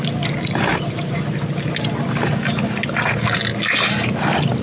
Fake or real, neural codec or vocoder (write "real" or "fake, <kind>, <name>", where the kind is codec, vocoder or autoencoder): real